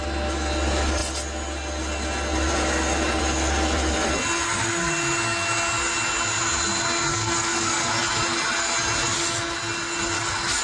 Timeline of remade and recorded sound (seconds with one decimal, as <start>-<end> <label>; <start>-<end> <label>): 0.0-7.1 recorded; 7.1-7.9 remade; 7.9-10.6 recorded